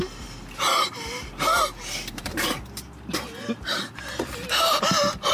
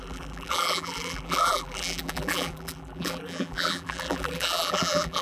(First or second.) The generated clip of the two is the second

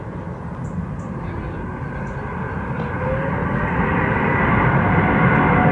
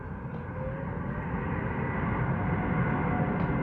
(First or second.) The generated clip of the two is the first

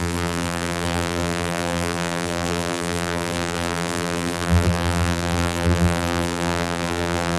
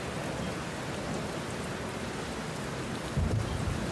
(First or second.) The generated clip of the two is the first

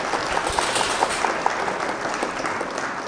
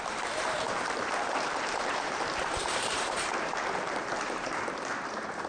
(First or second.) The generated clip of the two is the second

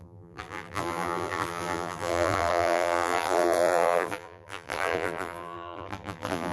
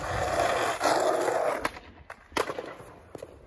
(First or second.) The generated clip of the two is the first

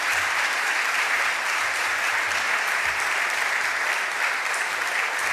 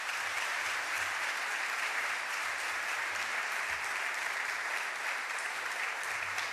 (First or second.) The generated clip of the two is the second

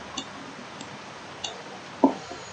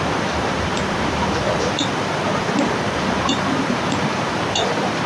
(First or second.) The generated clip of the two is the second